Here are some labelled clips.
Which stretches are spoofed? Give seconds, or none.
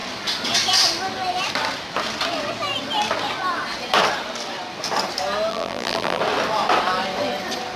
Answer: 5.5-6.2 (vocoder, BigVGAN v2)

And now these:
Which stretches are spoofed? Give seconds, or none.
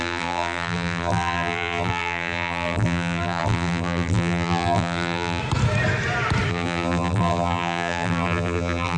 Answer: 0.0-5.4 (vocoder, BigVGAN v2); 6.5-9.0